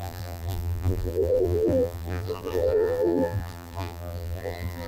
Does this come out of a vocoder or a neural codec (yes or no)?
yes